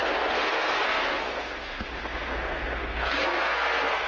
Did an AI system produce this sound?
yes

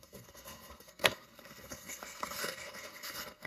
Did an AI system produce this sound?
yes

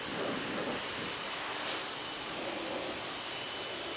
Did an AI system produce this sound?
no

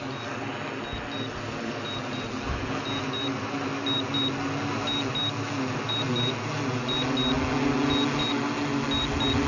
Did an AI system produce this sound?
no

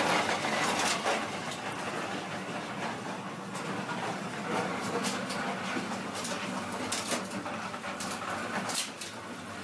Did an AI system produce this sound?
no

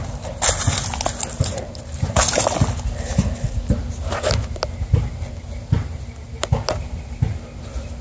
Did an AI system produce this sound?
no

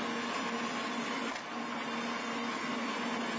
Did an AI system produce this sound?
no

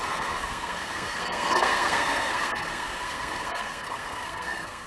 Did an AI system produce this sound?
yes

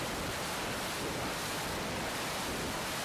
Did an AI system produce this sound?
no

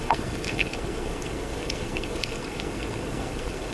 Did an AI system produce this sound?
yes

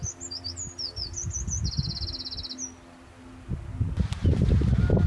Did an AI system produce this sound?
no